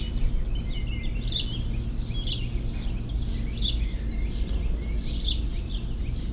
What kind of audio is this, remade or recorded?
recorded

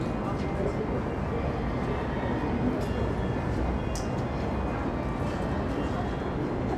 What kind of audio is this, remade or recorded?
recorded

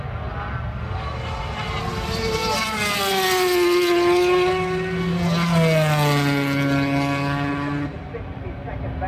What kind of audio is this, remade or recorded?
recorded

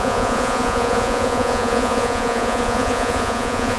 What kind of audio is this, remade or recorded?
remade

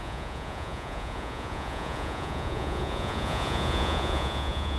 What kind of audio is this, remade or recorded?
remade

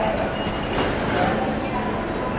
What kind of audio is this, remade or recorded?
recorded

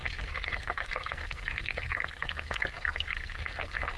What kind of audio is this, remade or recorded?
remade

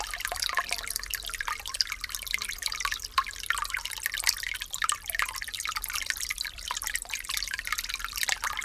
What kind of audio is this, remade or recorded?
remade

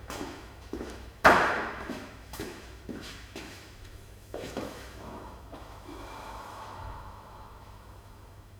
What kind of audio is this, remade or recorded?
remade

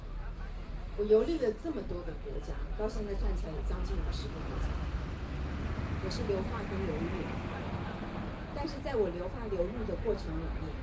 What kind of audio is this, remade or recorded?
recorded